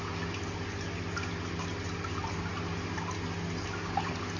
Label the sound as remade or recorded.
recorded